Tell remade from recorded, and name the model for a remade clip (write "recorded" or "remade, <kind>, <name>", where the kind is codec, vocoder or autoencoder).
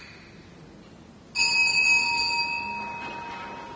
recorded